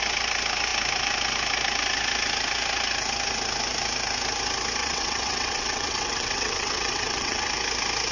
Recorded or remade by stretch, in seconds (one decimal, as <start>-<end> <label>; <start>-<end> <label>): 0.0-4.8 recorded; 4.8-7.5 remade; 7.5-8.1 recorded